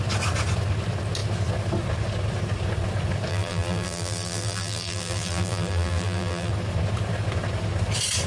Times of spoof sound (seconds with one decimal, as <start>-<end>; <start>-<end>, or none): 3.3-6.5